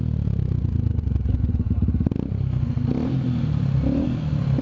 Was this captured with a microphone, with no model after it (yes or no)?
yes